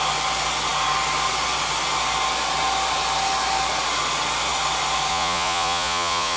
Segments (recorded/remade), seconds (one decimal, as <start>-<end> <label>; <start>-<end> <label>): 0.0-5.1 recorded; 5.1-6.4 remade